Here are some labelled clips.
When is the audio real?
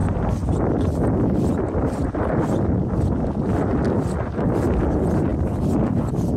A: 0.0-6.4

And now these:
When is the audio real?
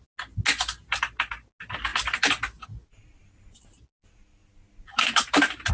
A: 0.0-1.9; 3.8-4.4